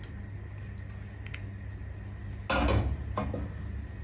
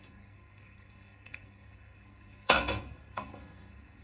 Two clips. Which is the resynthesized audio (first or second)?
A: second